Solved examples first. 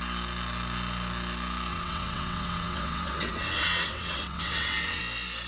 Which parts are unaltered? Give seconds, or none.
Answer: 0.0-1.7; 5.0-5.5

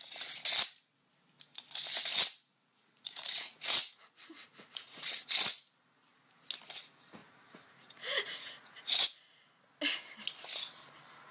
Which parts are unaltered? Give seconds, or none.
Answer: 0.0-2.5; 5.1-7.2; 9.2-11.3

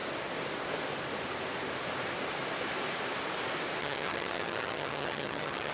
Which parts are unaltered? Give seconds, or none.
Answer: 0.0-3.8

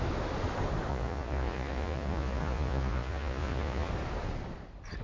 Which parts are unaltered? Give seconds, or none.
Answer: 0.0-0.9; 3.9-5.0

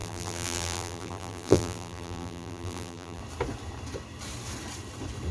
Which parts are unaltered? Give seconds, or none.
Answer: 3.2-5.3

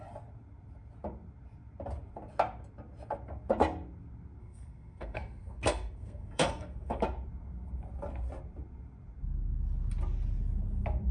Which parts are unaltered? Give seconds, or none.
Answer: 0.0-4.4; 7.0-11.1

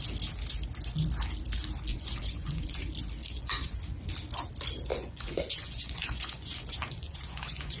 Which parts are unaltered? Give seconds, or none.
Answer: 0.0-1.9; 2.8-3.2; 3.8-4.9

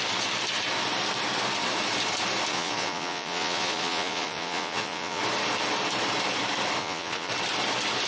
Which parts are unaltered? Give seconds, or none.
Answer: 0.0-2.5; 5.2-6.8; 7.3-8.1